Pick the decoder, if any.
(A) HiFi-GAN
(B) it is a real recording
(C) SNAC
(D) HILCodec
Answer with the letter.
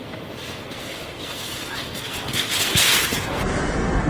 C